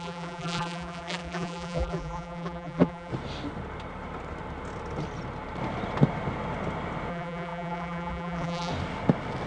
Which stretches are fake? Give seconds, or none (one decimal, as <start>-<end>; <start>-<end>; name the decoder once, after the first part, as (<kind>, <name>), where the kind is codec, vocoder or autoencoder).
0.0-3.1 (vocoder, BigVGAN v2); 7.1-8.7